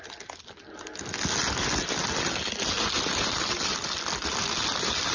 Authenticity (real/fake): real